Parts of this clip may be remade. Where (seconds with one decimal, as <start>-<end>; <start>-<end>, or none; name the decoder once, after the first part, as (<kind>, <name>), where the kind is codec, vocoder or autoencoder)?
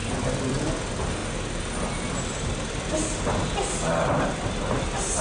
0.0-0.6 (vocoder, BigVGAN v2)